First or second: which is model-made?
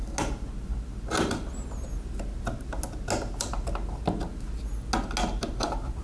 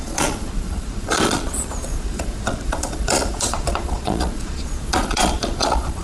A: second